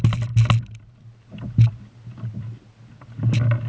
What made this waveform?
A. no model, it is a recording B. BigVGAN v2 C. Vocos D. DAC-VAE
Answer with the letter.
A